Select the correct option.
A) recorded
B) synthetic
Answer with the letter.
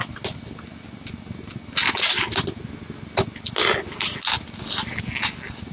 A